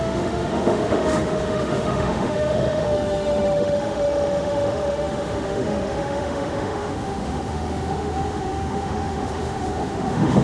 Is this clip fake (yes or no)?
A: yes